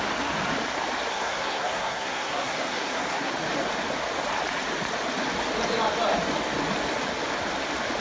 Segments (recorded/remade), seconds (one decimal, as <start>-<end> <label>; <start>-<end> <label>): 0.0-1.1 recorded; 1.1-3.3 remade; 3.3-8.0 recorded